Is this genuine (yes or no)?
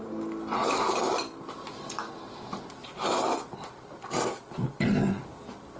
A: yes